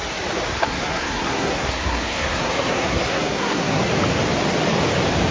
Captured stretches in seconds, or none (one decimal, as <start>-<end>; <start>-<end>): 0.0-0.6; 3.8-5.3